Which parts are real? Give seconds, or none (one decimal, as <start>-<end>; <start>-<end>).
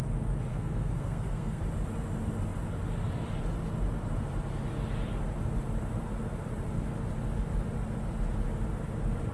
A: 0.0-0.5; 1.6-9.3